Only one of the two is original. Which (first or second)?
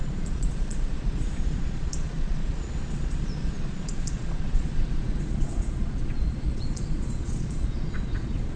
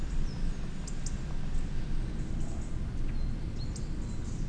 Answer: second